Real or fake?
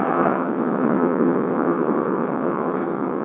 fake